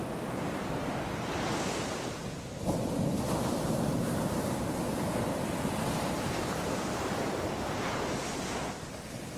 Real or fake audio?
real